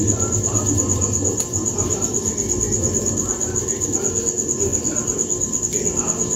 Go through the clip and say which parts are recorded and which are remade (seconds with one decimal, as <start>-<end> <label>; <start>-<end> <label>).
0.0-6.4 recorded